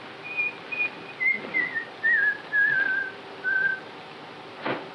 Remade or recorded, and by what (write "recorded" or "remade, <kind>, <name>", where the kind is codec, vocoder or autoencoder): recorded